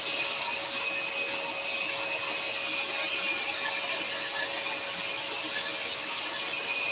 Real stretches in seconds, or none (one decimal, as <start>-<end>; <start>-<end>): 0.0-6.9